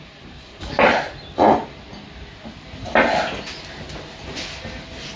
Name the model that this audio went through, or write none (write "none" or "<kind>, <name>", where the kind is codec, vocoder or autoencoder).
none